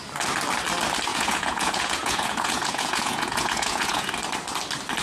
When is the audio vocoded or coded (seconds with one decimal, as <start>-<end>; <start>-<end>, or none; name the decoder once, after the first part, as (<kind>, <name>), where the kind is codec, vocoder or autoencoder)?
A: 1.1-4.1 (vocoder, Vocos)

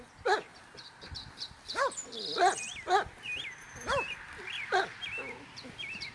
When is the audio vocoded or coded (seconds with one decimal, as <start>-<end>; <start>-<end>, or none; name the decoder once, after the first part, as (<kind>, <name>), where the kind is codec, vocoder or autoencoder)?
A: none